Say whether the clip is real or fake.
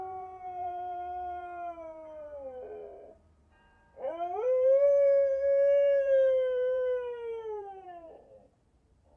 fake